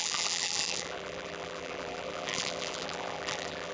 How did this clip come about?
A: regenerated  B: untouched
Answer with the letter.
A